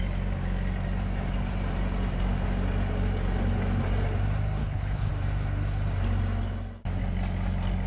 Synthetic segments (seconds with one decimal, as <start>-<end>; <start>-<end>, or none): 4.6-5.1